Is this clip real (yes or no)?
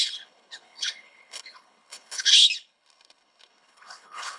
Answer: no